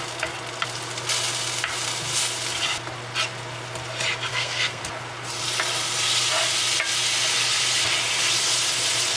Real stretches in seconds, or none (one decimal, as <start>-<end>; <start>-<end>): 0.0-4.3; 4.8-9.2